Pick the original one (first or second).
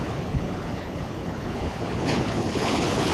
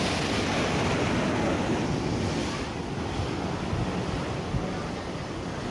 second